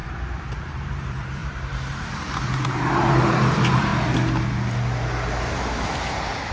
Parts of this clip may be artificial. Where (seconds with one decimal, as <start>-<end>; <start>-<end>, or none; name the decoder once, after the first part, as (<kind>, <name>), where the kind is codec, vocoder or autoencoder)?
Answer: 0.0-3.9 (vocoder, BigVGAN v2); 5.4-6.5